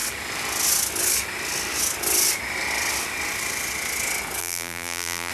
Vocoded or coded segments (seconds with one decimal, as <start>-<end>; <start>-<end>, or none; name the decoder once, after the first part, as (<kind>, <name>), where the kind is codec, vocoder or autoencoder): 4.4-5.3 (vocoder, BigVGAN v2)